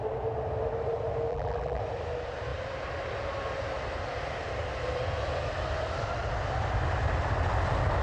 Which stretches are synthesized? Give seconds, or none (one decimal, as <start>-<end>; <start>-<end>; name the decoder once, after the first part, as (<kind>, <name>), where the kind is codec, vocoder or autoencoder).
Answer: 1.3-1.8 (vocoder, BigVGAN v2)